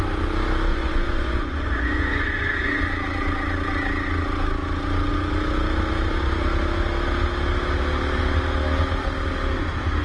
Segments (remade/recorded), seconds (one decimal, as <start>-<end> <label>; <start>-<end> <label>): 0.0-0.7 recorded; 0.7-2.8 remade; 2.8-10.0 recorded